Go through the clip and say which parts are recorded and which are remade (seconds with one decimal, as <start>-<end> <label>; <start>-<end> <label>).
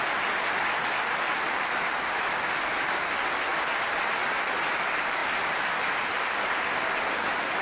0.0-7.6 recorded